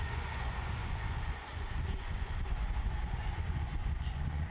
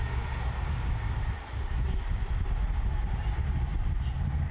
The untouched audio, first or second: second